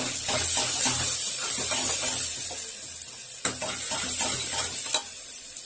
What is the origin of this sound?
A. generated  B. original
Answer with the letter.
B